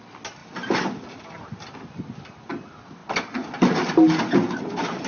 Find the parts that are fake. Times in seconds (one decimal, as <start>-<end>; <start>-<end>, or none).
none